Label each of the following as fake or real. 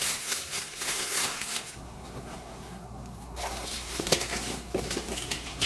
fake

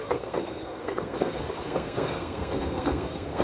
fake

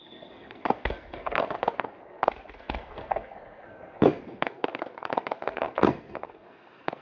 fake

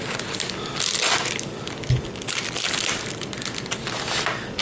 real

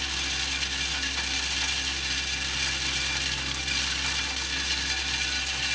real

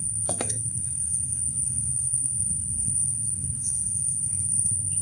fake